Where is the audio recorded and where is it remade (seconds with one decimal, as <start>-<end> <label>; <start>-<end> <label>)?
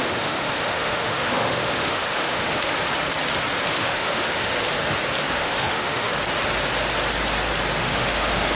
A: 0.0-2.8 remade; 2.8-3.7 recorded; 3.7-4.5 remade; 4.5-5.3 recorded; 5.3-6.1 remade; 6.1-7.8 recorded; 7.8-8.6 remade